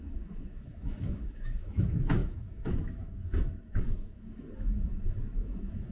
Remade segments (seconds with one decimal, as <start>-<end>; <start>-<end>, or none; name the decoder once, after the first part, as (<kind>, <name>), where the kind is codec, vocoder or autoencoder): 0.0-5.9 (autoencoder, DAC-VAE)